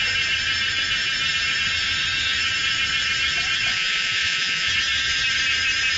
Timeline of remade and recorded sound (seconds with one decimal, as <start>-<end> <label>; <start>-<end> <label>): 0.0-3.7 recorded; 3.7-4.7 remade; 4.7-6.0 recorded

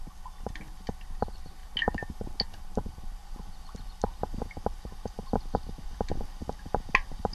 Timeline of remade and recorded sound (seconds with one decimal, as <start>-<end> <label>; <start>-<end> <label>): 0.0-7.3 recorded

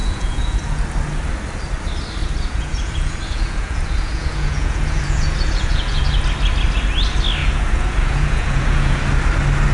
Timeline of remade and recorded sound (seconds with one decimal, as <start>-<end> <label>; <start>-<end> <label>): 0.0-0.8 remade; 0.8-2.2 recorded; 2.2-6.0 remade; 6.0-7.4 recorded; 7.4-9.0 remade; 9.0-9.7 recorded

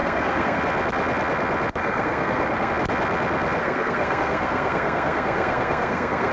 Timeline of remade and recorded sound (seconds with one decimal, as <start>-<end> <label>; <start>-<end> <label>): 0.0-0.6 remade; 0.6-1.8 recorded; 1.8-2.7 remade; 2.7-3.6 recorded; 3.6-6.3 remade

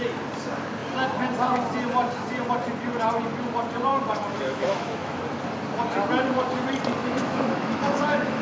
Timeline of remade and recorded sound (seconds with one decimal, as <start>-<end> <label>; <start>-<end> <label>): 0.0-3.9 recorded; 3.9-5.2 remade; 5.2-7.0 recorded; 7.0-8.4 remade